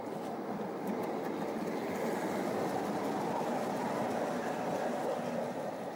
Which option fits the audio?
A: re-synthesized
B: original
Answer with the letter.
B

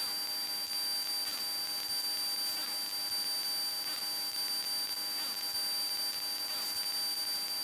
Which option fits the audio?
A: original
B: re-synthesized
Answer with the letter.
A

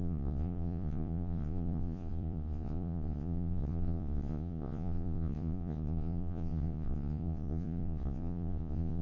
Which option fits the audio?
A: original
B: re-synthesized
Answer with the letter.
B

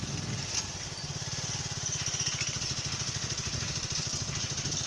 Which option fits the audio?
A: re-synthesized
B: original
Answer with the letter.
B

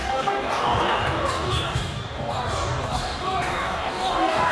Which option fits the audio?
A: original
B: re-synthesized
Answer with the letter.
B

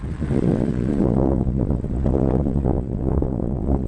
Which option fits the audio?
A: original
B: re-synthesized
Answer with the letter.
B